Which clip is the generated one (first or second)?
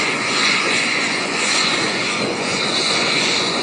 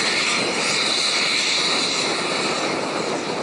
first